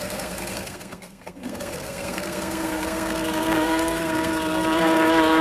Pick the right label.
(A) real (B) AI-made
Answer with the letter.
B